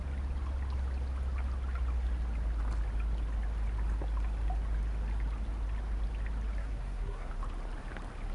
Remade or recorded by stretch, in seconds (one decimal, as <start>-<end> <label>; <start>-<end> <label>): 0.0-6.6 recorded; 6.6-7.3 remade; 7.3-8.3 recorded